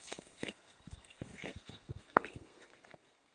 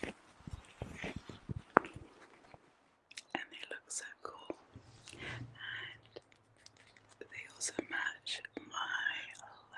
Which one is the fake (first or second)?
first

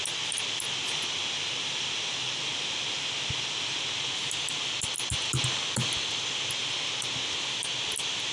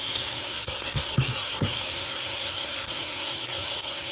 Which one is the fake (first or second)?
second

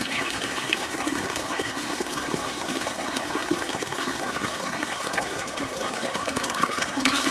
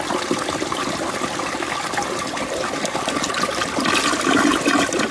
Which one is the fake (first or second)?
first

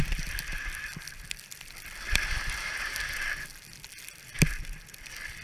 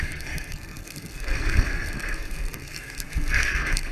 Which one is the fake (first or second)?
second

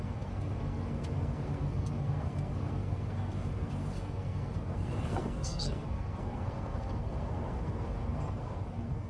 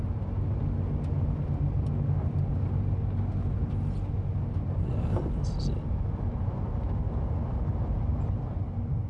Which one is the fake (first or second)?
first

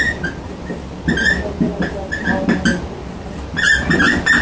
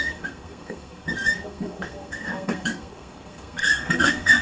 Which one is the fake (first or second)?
second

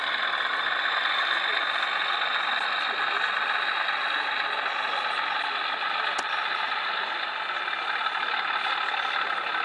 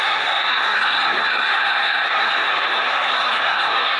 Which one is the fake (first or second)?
second